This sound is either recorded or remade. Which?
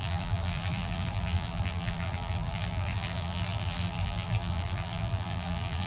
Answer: remade